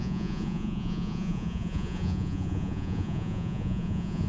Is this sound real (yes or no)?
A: no